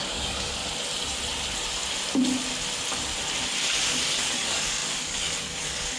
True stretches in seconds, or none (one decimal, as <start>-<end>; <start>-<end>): 0.6-4.2